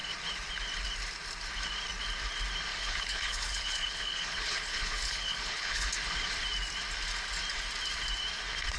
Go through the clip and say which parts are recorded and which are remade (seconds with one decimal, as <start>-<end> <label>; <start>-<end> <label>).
0.0-2.7 recorded; 2.7-5.9 remade; 5.9-8.8 recorded